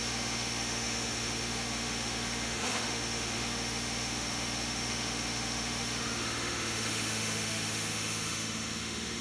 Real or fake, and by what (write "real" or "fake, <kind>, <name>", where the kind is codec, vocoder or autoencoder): fake, autoencoder, DAC-VAE